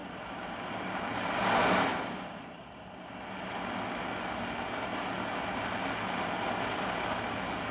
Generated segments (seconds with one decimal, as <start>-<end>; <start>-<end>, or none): 1.9-3.1